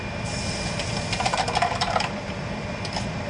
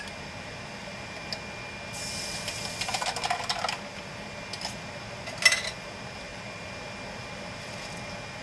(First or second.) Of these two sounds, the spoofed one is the first